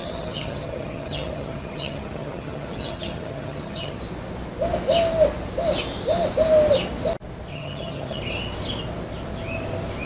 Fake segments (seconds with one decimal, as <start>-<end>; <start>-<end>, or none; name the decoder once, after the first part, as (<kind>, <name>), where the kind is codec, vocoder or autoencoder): 0.0-4.0 (vocoder, HiFi-GAN); 7.5-8.2